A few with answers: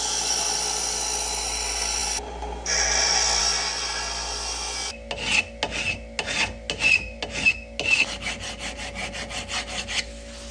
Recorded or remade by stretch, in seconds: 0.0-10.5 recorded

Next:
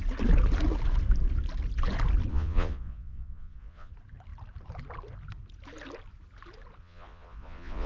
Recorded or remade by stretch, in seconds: 0.0-2.3 recorded; 2.3-3.9 remade; 3.9-6.8 recorded; 6.8-7.9 remade

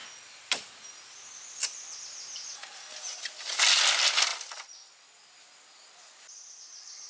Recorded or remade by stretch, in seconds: 0.0-7.1 recorded

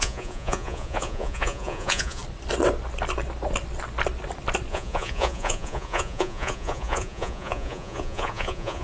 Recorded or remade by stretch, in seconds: 0.0-2.2 remade; 2.2-4.7 recorded; 4.7-8.8 remade

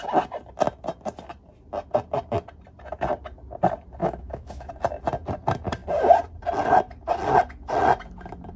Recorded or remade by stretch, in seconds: 0.0-4.0 recorded; 4.0-4.7 remade; 4.7-8.6 recorded

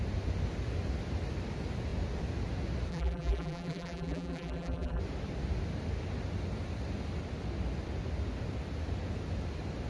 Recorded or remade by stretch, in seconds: 0.0-2.9 recorded; 2.9-5.0 remade; 5.0-9.9 recorded

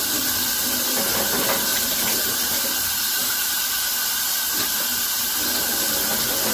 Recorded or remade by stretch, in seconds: 0.0-1.7 recorded; 1.7-2.6 remade; 2.6-3.2 recorded; 3.2-3.8 remade; 3.8-6.5 recorded

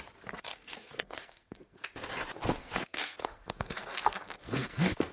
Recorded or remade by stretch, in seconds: 0.0-0.5 recorded; 0.5-1.9 remade; 1.9-2.6 recorded; 2.6-5.1 remade